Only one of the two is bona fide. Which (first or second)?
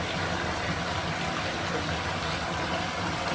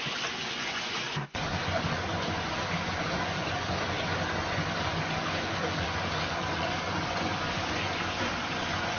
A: first